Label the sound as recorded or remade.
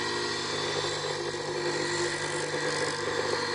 recorded